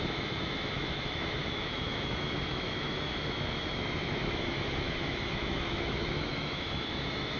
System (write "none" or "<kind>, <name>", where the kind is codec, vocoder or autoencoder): autoencoder, DAC-VAE